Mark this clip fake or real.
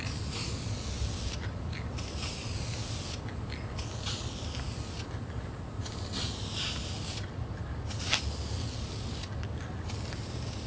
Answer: real